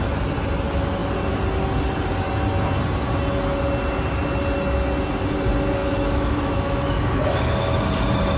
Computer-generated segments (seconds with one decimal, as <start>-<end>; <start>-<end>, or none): 5.8-7.8